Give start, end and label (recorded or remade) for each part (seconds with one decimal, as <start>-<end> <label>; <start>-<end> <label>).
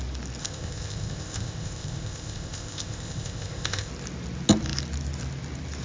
0.0-0.4 recorded; 0.4-3.9 remade; 3.9-5.8 recorded